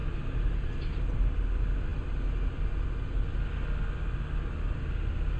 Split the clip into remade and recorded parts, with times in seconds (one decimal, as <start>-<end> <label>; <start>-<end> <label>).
0.0-5.4 recorded